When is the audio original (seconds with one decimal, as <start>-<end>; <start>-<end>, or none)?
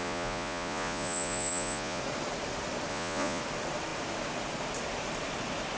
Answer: 2.0-2.9; 3.4-5.8